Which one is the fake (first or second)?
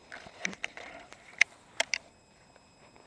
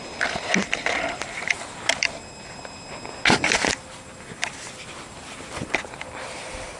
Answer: first